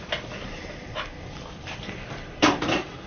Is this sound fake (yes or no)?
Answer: yes